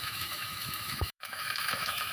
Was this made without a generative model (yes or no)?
no